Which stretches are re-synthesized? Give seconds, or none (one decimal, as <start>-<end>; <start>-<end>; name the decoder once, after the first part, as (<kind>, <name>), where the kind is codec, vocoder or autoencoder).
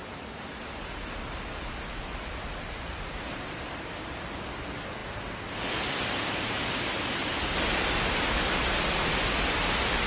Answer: none